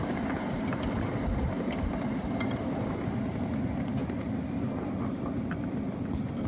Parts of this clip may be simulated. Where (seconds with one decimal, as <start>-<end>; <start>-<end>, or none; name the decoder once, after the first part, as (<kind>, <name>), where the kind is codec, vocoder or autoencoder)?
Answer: none